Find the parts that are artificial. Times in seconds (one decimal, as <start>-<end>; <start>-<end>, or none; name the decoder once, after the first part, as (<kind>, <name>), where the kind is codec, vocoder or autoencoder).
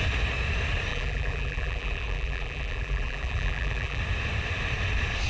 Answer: 0.9-4.0 (vocoder, BigVGAN v2)